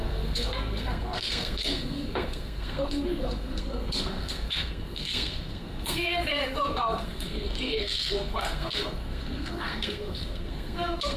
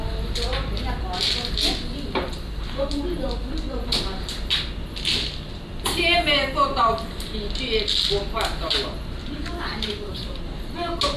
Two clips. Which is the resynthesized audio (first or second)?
first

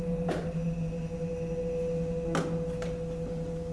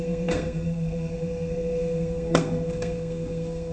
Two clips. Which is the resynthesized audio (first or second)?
second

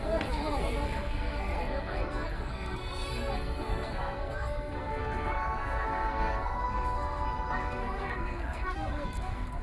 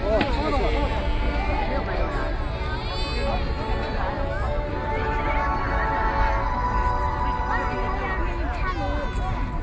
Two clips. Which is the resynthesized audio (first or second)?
first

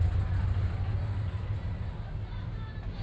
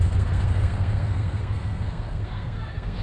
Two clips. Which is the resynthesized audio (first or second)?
second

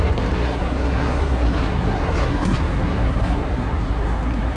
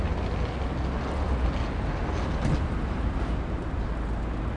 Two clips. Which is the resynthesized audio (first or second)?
first